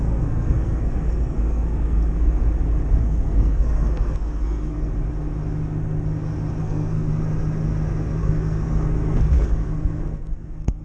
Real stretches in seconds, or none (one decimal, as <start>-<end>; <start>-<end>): 2.4-3.0; 4.9-6.6; 7.1-8.2

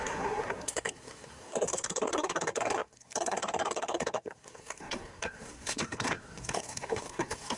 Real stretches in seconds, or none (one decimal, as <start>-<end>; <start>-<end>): none

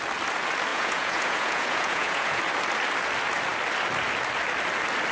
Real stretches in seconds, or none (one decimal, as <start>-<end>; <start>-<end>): 0.0-0.7; 2.4-5.1

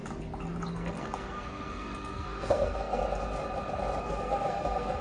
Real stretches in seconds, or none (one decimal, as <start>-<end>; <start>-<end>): 0.0-0.7; 3.0-4.0

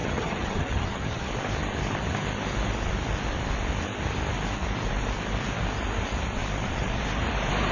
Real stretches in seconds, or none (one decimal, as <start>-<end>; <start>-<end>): 1.3-7.7